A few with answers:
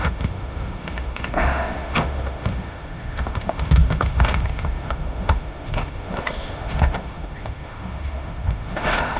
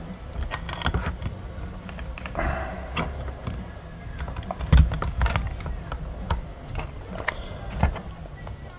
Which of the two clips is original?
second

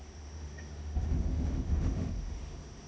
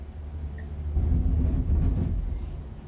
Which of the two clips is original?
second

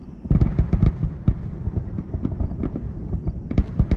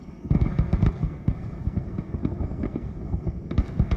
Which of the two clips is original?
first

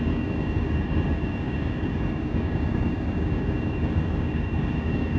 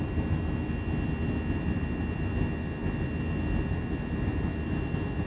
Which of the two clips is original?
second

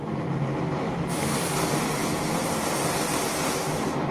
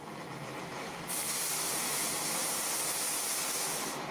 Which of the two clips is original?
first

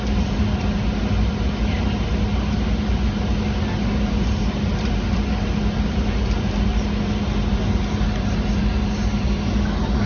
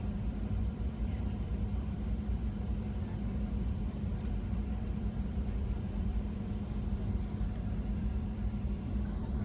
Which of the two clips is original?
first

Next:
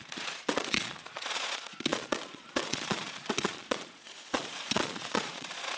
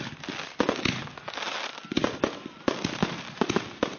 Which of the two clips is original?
second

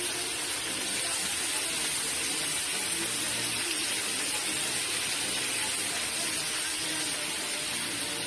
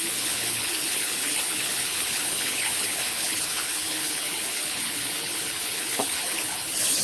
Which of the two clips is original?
first